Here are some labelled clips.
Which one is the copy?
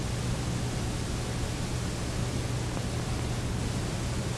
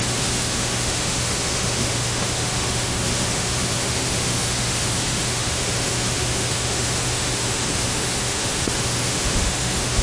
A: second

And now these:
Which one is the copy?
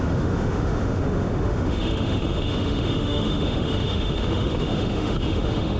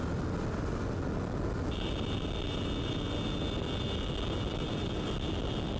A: first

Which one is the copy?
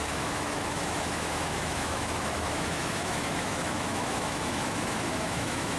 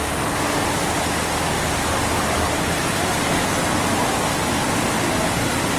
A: first